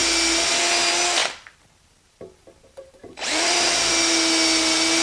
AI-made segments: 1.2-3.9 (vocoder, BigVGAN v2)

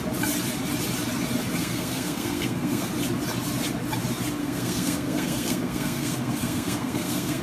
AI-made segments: 1.6-2.9 (codec, SNAC); 4.4-7.4

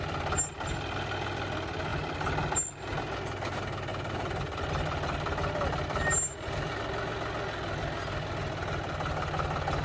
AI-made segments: 1.9-2.5 (vocoder, BigVGAN v2); 3.9-6.8